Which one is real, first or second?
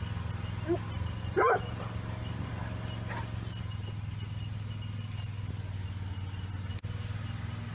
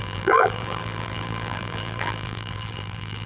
first